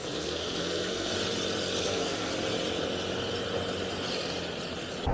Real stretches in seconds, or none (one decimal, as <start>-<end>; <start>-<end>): 1.1-1.8; 2.3-5.1